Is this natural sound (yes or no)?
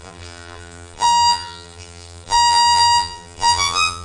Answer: no